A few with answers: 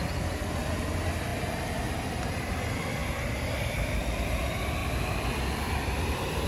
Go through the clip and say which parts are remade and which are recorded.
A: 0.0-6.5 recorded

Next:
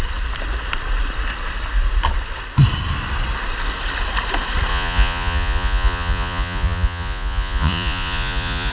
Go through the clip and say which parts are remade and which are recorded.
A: 0.0-4.7 recorded; 4.7-8.7 remade